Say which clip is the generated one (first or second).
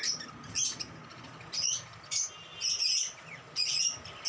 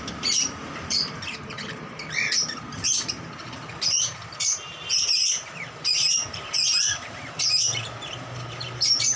second